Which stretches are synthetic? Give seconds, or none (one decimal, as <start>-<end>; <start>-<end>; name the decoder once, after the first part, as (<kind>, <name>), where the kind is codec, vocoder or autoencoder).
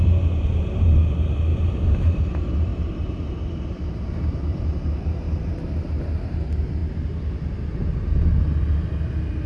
1.5-2.2 (vocoder, BigVGAN v2); 2.7-5.5